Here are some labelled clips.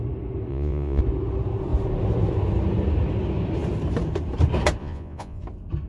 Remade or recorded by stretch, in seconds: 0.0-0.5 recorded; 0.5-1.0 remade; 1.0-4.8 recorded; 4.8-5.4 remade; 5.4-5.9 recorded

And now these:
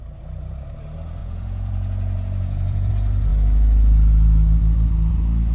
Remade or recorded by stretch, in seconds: 0.0-1.2 recorded; 1.2-2.9 remade; 2.9-5.5 recorded

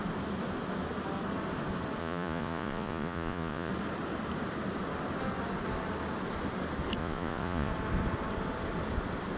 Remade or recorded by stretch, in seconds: 0.0-2.0 recorded; 2.0-3.7 remade; 3.7-7.0 recorded; 7.0-7.7 remade; 7.7-9.4 recorded

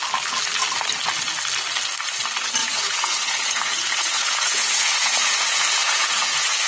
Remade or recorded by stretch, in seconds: 0.0-2.6 recorded; 2.6-6.7 remade

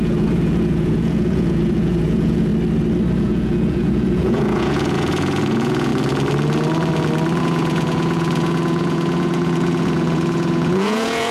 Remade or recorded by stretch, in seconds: 0.0-2.5 remade; 2.5-3.2 recorded; 3.2-5.9 remade; 5.9-7.4 recorded; 7.4-11.3 remade

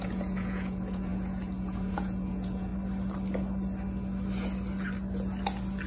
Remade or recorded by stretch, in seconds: 0.0-2.7 remade; 2.7-5.9 recorded

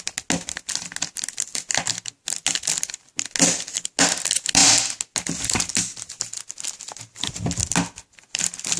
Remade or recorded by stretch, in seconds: 0.0-8.8 recorded

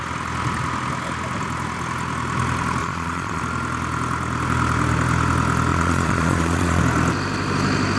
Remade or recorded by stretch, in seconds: 0.0-2.8 recorded; 2.8-3.4 remade; 3.4-5.7 recorded; 5.7-6.8 remade; 6.8-8.0 recorded